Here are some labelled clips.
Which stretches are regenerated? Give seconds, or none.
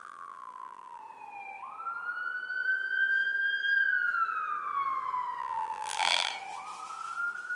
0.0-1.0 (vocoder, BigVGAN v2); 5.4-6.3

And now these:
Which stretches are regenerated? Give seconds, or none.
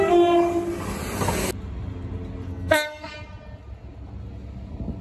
2.5-3.1 (codec, SNAC)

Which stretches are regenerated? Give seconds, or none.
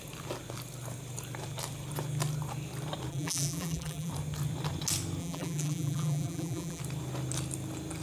3.1-4.1 (vocoder, BigVGAN v2); 5.2-6.8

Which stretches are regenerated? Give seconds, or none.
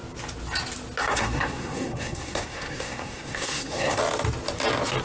1.0-4.0 (codec, SNAC)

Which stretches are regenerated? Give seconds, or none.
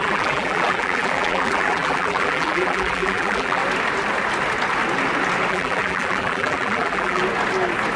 0.0-3.6 (vocoder, BigVGAN v2); 5.5-7.2